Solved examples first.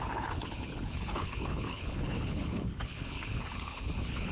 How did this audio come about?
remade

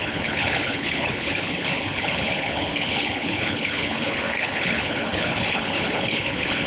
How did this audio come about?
remade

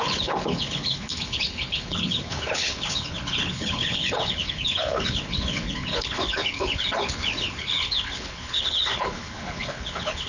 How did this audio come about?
remade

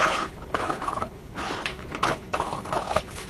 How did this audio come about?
remade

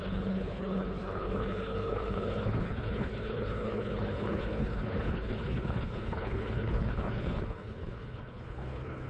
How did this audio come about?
remade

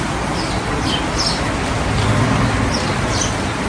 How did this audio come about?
recorded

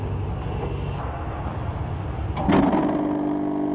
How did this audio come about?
recorded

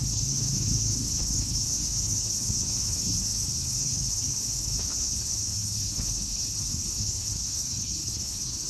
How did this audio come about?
remade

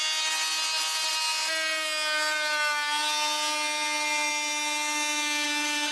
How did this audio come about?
recorded